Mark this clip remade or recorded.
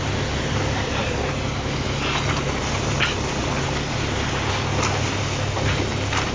recorded